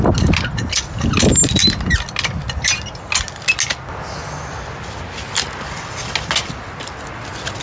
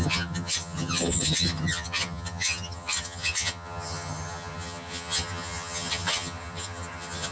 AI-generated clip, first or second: second